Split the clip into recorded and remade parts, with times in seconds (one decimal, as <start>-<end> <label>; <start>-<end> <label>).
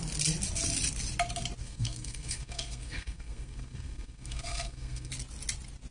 0.0-1.6 recorded; 1.6-5.1 remade; 5.1-5.9 recorded